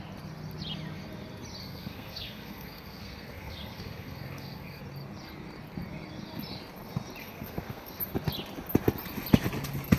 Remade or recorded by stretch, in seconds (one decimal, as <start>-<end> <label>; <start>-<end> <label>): 0.0-1.6 recorded; 1.6-4.8 remade; 4.8-7.2 recorded; 7.2-8.0 remade; 8.0-10.0 recorded